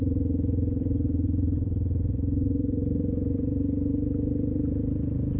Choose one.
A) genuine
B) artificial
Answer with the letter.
B